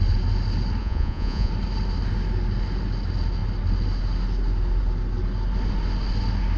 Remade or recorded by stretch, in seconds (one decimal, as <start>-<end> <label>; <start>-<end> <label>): 0.0-0.8 recorded; 0.8-1.5 remade; 1.5-6.6 recorded